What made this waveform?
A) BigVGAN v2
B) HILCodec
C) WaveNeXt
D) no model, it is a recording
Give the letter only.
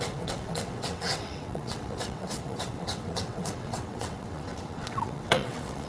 C